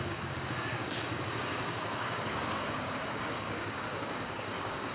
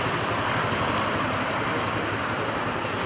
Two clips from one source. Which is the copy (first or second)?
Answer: first